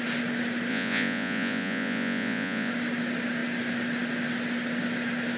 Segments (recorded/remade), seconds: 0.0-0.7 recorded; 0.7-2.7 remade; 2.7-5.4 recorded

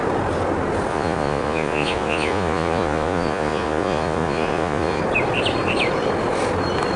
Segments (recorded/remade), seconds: 0.0-0.9 recorded; 0.9-5.0 remade; 5.0-7.0 recorded